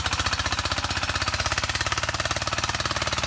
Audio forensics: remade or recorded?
recorded